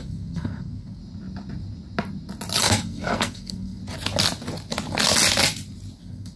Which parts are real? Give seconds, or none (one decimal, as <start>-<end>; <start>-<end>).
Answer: 1.0-2.6; 3.8-6.0